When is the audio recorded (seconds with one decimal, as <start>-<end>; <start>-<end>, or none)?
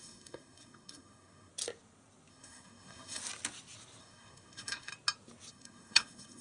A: 1.5-2.3; 3.2-4.0; 4.9-5.5